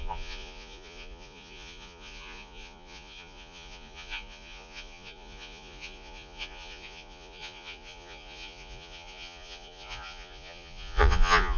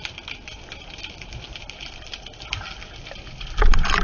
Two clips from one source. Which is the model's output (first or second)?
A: first